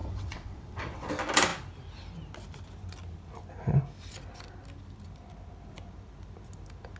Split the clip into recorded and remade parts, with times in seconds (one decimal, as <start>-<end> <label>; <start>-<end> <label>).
0.0-1.1 remade; 1.1-7.0 recorded